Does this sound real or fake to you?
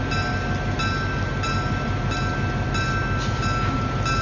real